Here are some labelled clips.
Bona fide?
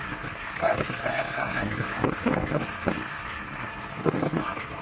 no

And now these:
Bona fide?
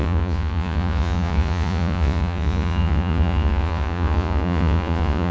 no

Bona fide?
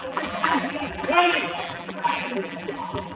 no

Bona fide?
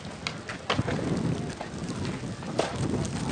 yes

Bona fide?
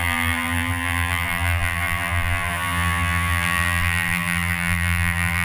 no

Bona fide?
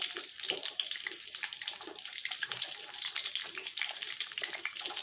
no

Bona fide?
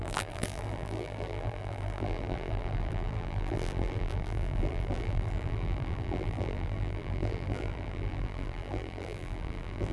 no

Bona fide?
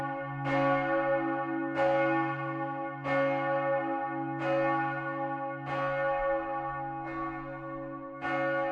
yes